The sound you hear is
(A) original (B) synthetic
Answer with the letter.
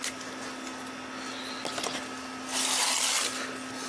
A